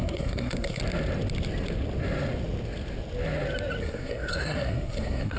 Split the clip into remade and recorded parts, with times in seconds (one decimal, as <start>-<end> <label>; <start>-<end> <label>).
0.0-0.8 remade; 0.8-3.8 recorded; 3.8-5.4 remade